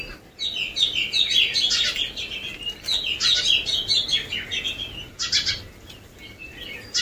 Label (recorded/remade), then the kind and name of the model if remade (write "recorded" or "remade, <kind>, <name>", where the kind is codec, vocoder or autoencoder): recorded